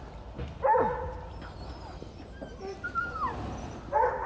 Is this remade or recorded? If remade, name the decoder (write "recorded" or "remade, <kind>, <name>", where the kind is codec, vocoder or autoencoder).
recorded